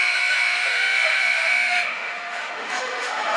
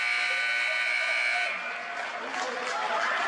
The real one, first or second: second